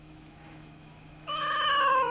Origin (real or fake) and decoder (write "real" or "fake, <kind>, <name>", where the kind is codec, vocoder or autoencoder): fake, autoencoder, DAC-VAE